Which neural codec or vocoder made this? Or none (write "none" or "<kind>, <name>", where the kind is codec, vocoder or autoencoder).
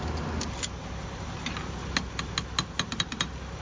none